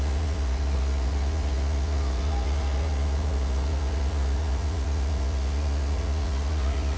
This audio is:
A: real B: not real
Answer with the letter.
B